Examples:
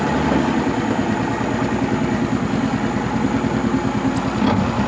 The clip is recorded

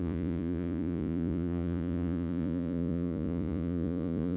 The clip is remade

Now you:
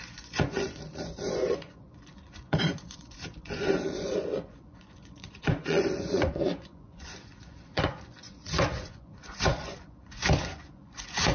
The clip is remade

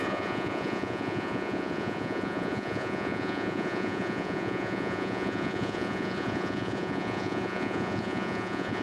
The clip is remade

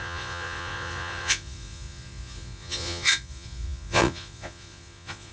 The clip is remade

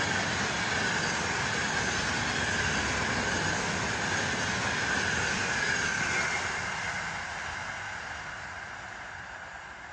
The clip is recorded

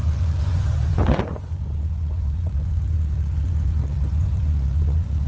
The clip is remade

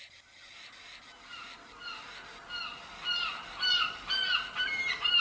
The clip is recorded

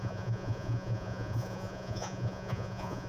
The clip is remade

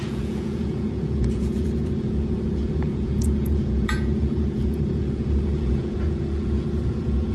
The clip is remade